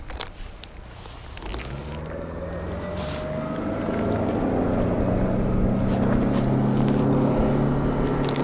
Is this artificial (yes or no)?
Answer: no